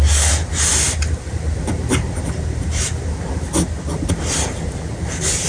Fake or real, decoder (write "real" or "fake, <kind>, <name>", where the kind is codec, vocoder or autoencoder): real